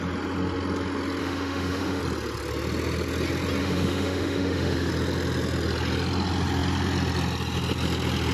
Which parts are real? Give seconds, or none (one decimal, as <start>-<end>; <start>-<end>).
0.0-1.2; 2.0-3.6; 4.9-8.3